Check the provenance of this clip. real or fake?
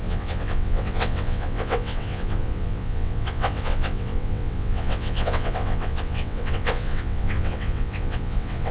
fake